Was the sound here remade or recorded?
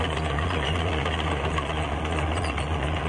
remade